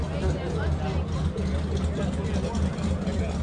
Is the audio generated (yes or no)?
no